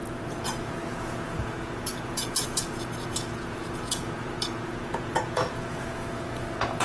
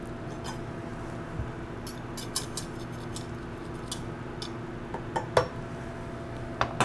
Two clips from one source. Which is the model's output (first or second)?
first